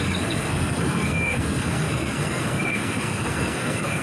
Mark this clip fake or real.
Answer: fake